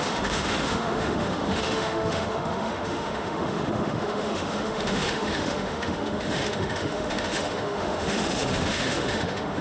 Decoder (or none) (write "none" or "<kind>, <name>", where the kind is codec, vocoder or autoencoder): autoencoder, DAC-VAE